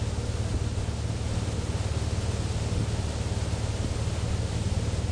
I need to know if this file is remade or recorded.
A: recorded